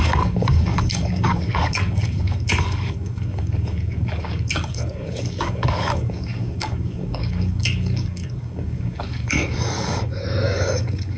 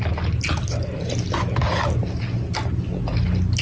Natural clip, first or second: second